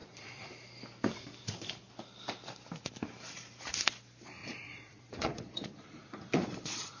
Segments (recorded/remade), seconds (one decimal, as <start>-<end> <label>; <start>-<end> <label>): 0.0-0.5 remade; 0.5-4.4 recorded; 4.4-7.0 remade